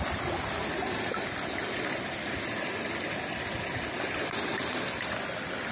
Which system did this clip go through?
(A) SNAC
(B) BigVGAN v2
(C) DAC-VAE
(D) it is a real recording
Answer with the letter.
D